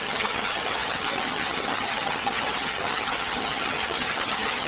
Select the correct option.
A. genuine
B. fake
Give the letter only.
B